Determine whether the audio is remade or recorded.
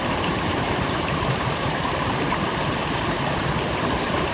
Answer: remade